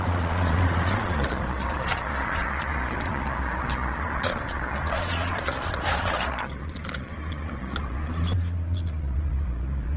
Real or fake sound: fake